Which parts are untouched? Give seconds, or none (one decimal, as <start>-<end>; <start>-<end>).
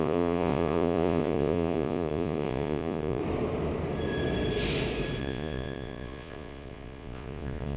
3.2-5.2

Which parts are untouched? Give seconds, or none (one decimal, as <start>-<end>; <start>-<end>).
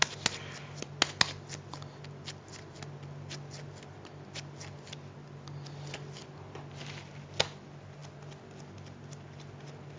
0.0-10.0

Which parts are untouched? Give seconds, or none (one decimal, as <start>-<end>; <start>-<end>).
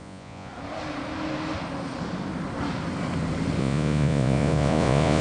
0.5-3.6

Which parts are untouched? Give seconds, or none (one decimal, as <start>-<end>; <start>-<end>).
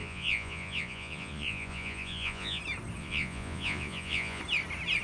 2.6-3.0; 4.4-5.0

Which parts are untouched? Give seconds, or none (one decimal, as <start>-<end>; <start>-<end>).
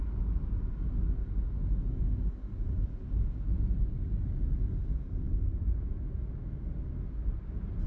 0.0-7.9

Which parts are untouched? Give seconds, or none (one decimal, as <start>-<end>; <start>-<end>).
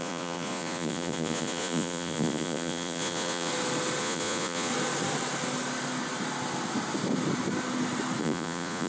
3.5-4.0; 4.7-8.2